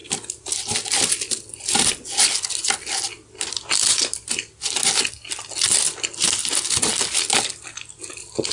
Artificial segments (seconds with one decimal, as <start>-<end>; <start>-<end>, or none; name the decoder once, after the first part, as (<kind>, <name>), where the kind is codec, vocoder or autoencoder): none